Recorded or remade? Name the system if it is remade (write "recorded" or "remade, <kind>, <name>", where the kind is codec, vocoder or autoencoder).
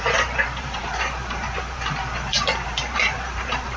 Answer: remade, vocoder, BigVGAN v2